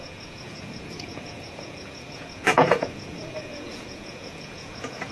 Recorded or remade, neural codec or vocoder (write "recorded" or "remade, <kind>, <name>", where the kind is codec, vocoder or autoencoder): remade, vocoder, Vocos